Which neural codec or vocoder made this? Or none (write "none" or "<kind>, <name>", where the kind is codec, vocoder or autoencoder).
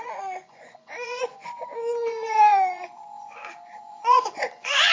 vocoder, Vocos